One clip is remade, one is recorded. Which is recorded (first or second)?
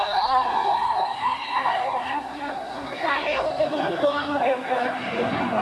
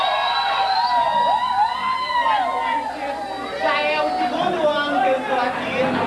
second